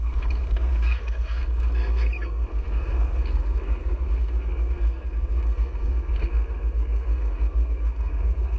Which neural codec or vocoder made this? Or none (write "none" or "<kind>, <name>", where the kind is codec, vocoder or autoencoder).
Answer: codec, SNAC